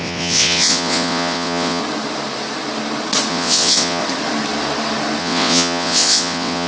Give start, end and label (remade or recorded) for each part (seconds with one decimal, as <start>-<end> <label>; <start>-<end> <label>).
0.0-1.8 remade; 1.8-3.3 recorded; 3.3-4.0 remade; 4.0-5.2 recorded; 5.2-6.7 remade

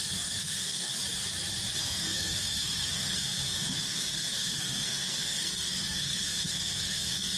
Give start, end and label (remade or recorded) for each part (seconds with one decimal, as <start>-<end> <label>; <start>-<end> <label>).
0.0-0.9 remade; 0.9-1.8 recorded; 1.8-7.4 remade

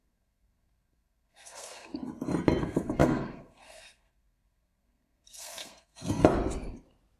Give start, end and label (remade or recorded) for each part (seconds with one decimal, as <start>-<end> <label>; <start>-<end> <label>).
0.0-1.9 remade; 1.9-2.6 recorded; 2.6-6.2 remade; 6.2-7.2 recorded

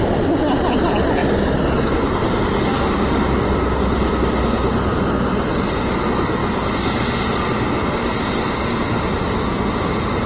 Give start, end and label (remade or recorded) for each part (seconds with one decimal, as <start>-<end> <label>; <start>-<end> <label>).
0.0-10.3 recorded

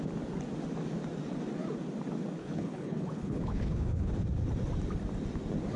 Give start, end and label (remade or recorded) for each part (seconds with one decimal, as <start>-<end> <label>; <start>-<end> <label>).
0.0-2.4 recorded; 2.4-4.1 remade; 4.1-5.8 recorded

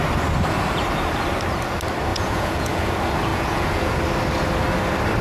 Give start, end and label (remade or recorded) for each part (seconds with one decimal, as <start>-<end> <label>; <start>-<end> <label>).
0.0-2.1 recorded; 2.1-2.9 remade; 2.9-3.3 recorded; 3.3-4.0 remade; 4.0-5.2 recorded

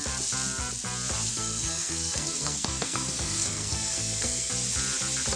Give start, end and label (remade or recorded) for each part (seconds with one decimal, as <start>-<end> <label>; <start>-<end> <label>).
0.0-1.3 recorded; 1.3-4.5 remade; 4.5-5.4 recorded